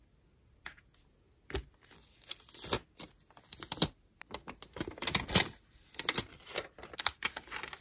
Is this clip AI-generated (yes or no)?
no